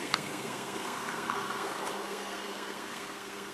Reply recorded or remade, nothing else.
remade